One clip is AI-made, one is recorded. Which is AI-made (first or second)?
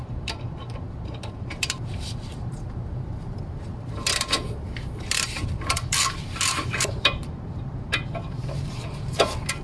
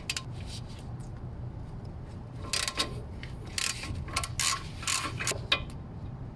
first